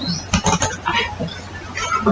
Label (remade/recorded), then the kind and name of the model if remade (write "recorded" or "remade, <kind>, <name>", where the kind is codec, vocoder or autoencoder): recorded